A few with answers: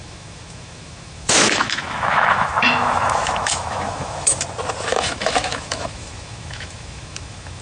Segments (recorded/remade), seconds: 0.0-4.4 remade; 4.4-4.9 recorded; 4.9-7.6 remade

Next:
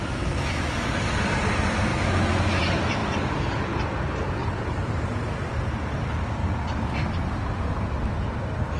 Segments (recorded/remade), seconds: 0.0-0.9 remade; 0.9-1.9 recorded; 1.9-2.6 remade; 2.6-8.8 recorded